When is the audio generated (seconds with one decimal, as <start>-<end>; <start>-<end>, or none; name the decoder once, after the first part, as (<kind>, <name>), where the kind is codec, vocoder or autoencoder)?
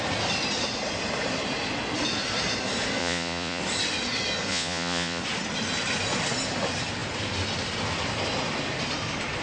3.0-3.6 (vocoder, Vocos); 4.5-5.2